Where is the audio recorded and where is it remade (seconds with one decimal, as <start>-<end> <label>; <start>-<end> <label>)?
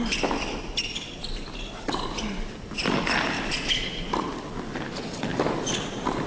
0.0-6.3 recorded